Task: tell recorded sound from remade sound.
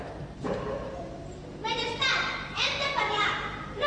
remade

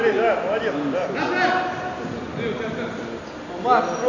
recorded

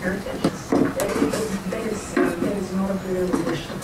recorded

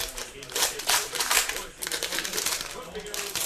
remade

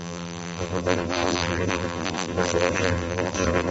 remade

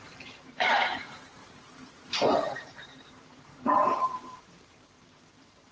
remade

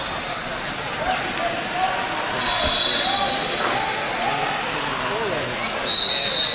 recorded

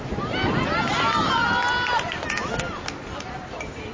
recorded